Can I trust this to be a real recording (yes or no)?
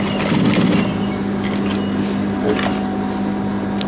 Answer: yes